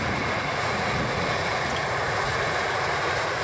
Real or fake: fake